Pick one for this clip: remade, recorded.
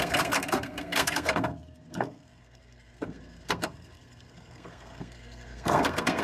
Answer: remade